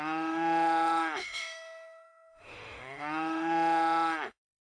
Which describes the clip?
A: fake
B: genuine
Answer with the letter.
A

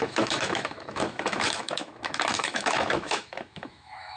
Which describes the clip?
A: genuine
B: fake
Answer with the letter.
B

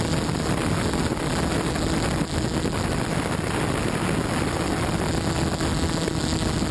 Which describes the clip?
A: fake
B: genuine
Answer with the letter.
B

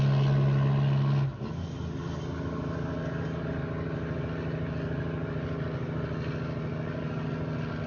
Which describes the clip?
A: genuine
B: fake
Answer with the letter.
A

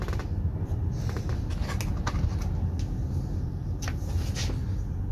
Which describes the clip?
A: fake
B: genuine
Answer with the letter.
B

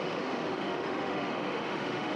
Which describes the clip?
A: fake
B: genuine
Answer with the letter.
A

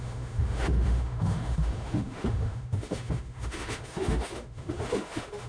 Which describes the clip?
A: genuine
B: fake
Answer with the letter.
B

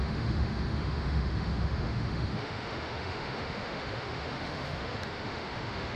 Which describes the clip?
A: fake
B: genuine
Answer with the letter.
A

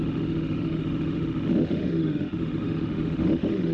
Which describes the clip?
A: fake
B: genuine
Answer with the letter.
A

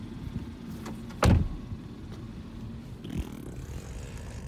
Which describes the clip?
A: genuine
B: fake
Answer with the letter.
A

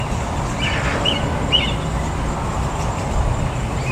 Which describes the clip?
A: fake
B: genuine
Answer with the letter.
B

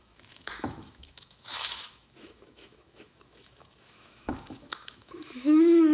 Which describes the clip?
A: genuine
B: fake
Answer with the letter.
B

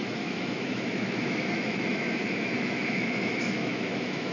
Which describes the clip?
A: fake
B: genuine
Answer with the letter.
A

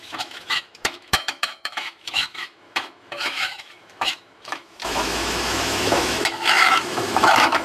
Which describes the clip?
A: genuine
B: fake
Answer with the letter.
B